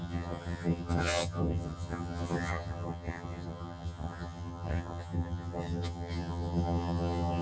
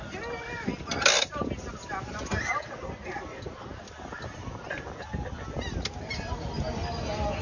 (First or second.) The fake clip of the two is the first